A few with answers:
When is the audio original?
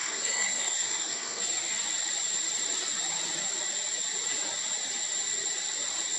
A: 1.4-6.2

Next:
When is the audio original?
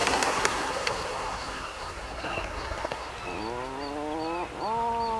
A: 3.1-5.2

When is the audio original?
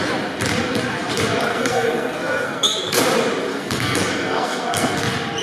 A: 0.0-1.5; 3.0-3.5; 5.0-5.4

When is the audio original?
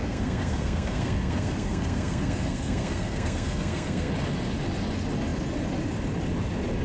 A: 4.1-6.8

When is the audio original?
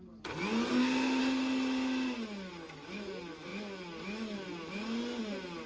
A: 0.0-0.7; 1.2-5.7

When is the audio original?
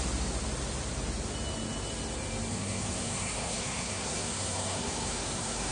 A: 0.0-2.5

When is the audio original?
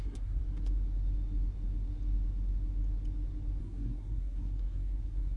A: 0.4-3.6